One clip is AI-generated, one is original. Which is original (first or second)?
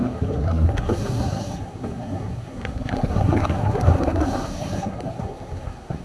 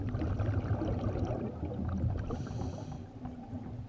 second